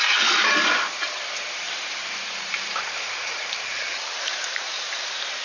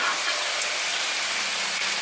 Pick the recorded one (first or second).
second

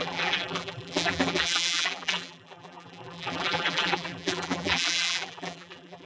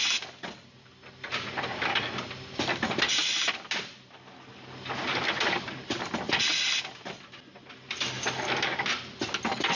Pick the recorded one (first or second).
second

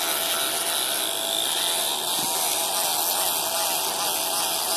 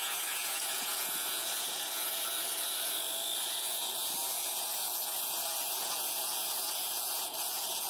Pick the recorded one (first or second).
first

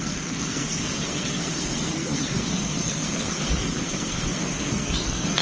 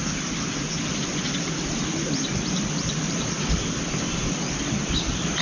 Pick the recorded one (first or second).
second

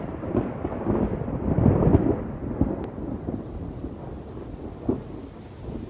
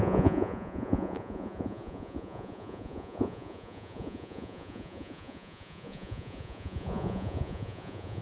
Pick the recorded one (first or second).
first